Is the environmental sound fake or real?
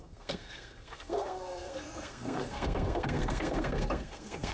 fake